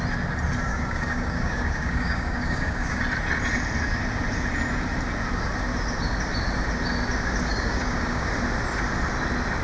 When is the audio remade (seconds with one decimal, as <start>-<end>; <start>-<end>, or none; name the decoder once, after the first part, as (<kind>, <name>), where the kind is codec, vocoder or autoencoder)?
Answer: 0.7-3.0 (codec, DAC); 7.5-8.3

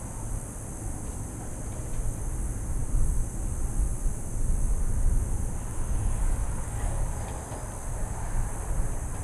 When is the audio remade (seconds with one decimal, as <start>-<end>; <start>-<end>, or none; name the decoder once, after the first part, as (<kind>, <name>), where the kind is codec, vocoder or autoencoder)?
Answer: 5.7-7.0 (codec, DAC)

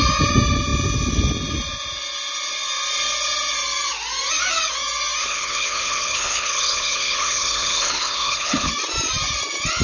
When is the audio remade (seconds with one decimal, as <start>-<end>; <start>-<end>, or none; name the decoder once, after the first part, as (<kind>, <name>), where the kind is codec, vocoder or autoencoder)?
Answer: 5.2-8.7 (codec, HILCodec)

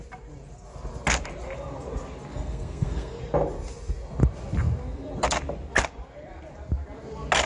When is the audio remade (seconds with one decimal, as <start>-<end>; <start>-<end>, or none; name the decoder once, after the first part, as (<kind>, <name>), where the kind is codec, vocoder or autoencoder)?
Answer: 2.3-3.2 (codec, SNAC)

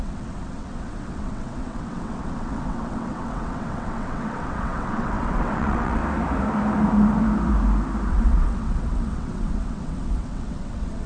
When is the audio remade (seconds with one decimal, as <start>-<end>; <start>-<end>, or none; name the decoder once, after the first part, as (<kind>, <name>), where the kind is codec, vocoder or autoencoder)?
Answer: 0.0-6.0 (vocoder, WaveNeXt); 8.1-11.1

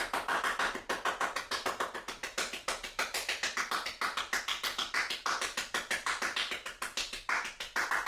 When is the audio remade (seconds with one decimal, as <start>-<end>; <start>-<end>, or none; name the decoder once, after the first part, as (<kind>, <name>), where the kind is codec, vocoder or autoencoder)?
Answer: none

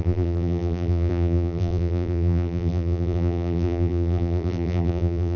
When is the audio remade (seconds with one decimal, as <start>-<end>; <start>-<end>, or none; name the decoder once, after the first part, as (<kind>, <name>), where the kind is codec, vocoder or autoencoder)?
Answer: 0.0-5.4 (vocoder, BigVGAN v2)